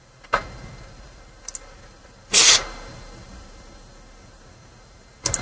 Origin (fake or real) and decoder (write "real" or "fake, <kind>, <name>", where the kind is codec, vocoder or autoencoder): real